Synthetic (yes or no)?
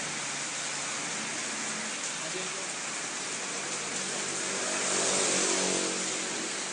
no